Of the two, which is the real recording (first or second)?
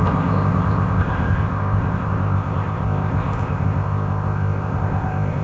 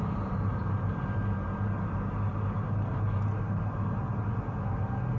second